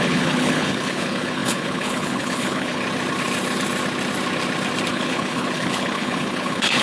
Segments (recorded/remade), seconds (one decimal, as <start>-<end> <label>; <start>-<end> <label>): 0.0-2.8 remade; 2.8-4.9 recorded; 4.9-6.8 remade